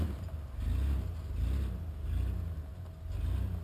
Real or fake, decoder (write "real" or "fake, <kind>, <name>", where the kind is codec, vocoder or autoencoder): real